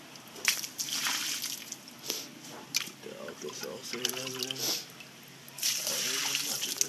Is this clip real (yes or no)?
yes